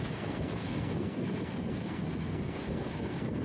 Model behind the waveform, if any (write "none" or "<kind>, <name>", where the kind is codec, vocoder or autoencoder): codec, SNAC